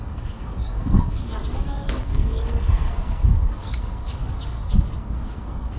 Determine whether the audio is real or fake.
fake